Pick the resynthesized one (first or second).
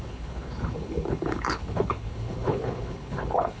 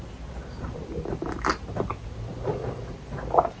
first